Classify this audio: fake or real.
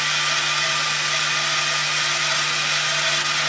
real